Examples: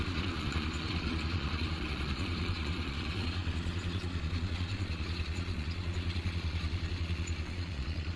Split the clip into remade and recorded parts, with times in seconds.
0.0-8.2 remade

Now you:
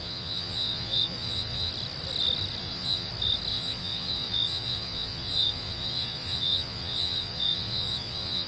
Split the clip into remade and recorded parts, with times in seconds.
0.0-1.7 remade; 1.7-2.6 recorded; 2.6-3.1 remade; 3.1-3.5 recorded; 3.5-8.5 remade